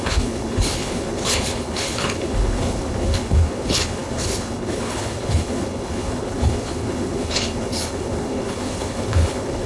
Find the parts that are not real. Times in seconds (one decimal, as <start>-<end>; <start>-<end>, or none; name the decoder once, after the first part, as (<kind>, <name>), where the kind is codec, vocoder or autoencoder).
0.0-9.7 (codec, HILCodec)